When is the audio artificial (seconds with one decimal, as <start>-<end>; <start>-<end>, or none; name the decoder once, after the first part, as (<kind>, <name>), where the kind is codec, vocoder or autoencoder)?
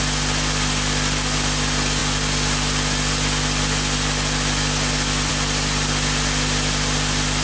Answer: none